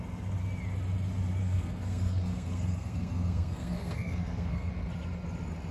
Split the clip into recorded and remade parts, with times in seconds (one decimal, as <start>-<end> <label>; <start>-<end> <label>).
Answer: 0.0-1.4 recorded; 1.4-4.7 remade; 4.7-5.7 recorded